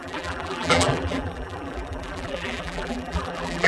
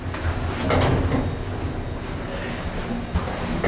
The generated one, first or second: first